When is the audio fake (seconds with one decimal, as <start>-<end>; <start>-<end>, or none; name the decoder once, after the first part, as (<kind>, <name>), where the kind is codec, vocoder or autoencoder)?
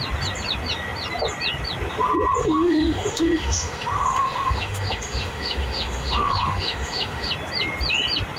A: 2.4-7.3 (autoencoder, DAC-VAE)